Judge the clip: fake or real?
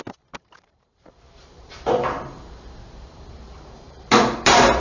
fake